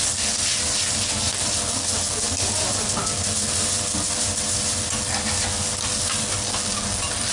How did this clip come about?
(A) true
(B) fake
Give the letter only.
A